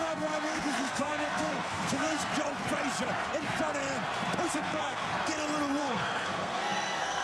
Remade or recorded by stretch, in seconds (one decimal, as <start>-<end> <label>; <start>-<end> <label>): 0.0-2.3 remade; 2.3-4.5 recorded; 4.5-5.1 remade; 5.1-5.8 recorded; 5.8-7.2 remade